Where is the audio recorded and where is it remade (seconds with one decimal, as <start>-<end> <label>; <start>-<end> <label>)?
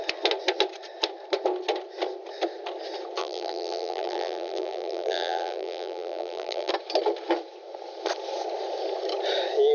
0.0-3.2 recorded; 3.2-6.7 remade; 6.7-9.7 recorded